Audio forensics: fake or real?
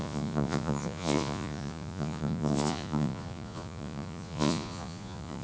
fake